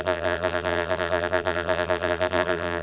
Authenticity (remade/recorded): remade